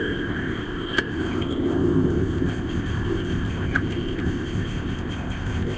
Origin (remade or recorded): remade